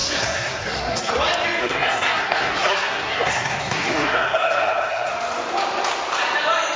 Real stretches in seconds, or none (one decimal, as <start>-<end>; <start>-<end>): 1.1-1.6; 5.1-6.8